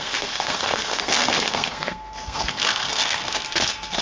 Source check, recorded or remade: remade